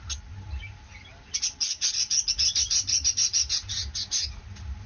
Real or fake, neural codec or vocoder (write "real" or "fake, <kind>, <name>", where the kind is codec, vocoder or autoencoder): real